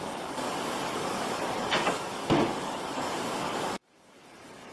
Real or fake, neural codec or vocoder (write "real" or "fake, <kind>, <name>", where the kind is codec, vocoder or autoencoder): fake, codec, DAC